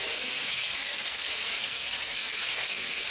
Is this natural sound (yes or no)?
no